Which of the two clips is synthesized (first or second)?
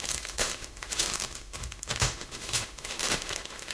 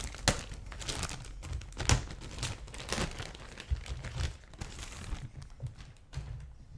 first